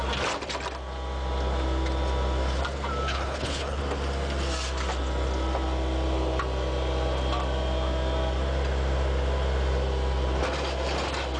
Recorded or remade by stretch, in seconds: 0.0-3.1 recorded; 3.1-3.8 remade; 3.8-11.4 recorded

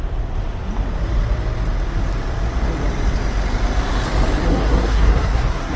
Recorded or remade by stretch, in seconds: 0.0-4.5 recorded; 4.5-5.8 remade

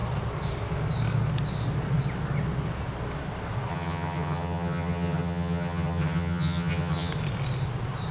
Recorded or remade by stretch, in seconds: 0.0-3.7 recorded; 3.7-7.1 remade; 7.1-8.1 recorded

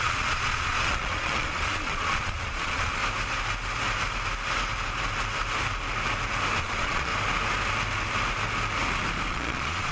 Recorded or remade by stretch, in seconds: 0.0-3.0 remade; 3.0-6.6 recorded; 6.6-7.1 remade; 7.1-9.3 recorded; 9.3-9.9 remade

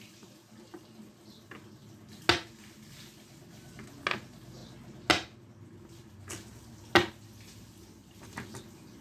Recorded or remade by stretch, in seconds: 0.0-8.0 recorded; 8.0-8.6 remade; 8.6-9.0 recorded